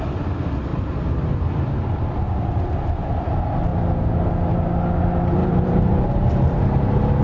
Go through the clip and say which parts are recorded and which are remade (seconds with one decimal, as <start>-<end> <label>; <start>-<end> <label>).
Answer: 0.0-0.7 recorded; 0.7-2.0 remade; 2.0-5.4 recorded; 5.4-6.6 remade; 6.6-7.2 recorded